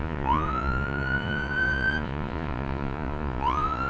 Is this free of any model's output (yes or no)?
no